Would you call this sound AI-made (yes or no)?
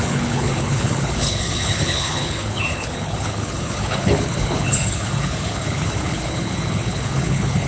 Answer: yes